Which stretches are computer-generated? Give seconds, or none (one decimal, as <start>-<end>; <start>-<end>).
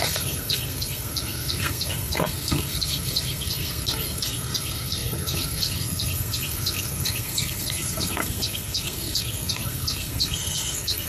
0.0-11.1